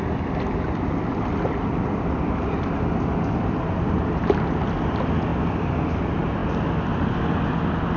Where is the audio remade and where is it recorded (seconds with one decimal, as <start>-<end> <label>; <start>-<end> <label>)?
0.0-8.0 recorded